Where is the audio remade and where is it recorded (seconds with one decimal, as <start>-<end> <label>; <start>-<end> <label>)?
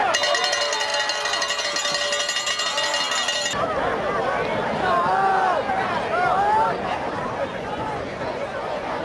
0.0-7.5 recorded; 7.5-9.0 remade